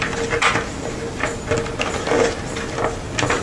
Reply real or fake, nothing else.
real